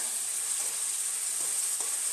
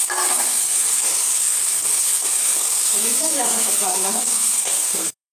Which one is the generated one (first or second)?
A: second